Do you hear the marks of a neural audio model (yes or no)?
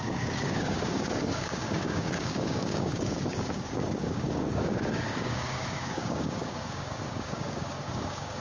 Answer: yes